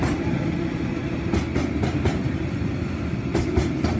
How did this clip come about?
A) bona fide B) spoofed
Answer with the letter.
A